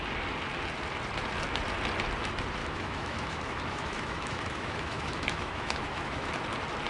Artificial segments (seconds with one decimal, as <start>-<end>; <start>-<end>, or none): 2.6-6.3